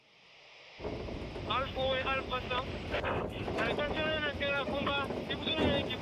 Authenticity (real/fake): real